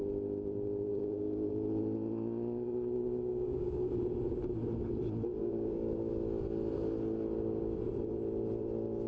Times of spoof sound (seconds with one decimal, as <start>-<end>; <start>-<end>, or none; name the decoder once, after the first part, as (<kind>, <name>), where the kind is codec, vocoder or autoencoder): 0.9-1.5 (codec, DAC); 3.3-3.9; 5.4-6.1